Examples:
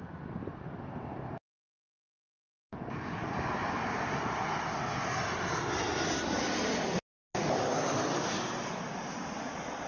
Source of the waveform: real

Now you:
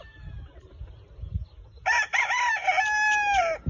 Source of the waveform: real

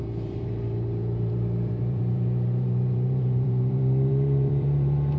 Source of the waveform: fake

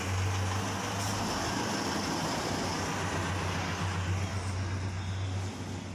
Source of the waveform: real